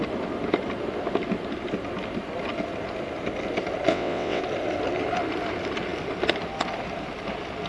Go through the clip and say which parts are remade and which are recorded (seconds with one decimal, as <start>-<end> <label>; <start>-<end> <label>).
0.0-3.9 recorded; 3.9-4.4 remade; 4.4-7.7 recorded